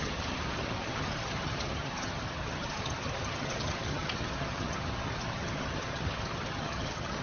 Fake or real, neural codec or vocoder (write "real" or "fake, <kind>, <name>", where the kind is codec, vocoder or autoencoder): fake, vocoder, HiFi-GAN